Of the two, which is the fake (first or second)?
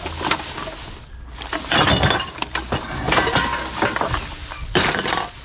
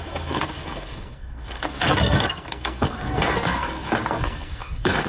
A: second